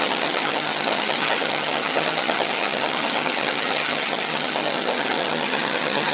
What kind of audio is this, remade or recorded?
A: remade